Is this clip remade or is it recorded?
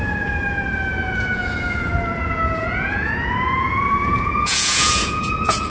remade